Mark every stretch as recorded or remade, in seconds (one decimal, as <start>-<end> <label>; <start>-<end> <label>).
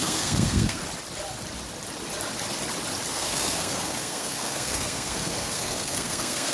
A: 0.0-0.8 remade; 0.8-3.1 recorded; 3.1-6.5 remade